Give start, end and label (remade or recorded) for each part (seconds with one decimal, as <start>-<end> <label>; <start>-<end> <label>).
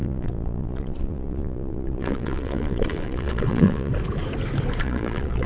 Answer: 0.0-3.9 remade; 3.9-4.8 recorded; 4.8-5.5 remade